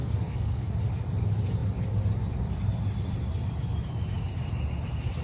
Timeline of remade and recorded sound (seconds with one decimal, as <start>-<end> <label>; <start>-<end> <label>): 0.0-0.7 remade; 0.7-5.2 recorded